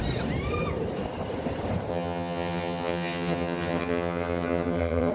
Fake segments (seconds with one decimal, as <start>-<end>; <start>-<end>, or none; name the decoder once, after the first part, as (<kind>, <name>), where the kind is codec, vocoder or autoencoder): 1.9-5.1 (vocoder, HiFi-GAN)